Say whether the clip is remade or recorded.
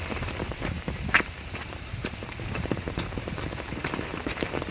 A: remade